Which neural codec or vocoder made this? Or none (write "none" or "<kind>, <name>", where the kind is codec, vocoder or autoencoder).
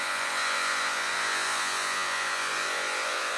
vocoder, Vocos